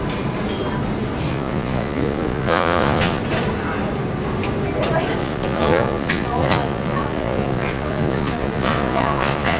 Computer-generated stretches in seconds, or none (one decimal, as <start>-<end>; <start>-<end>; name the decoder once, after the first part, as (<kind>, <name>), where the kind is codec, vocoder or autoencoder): 1.3-3.2 (vocoder, Vocos); 5.2-9.6